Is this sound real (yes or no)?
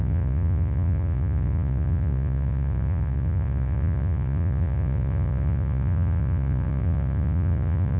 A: no